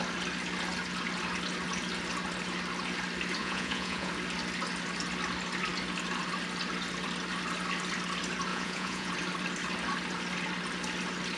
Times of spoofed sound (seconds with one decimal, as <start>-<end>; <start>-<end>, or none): 3.4-4.1; 8.5-9.1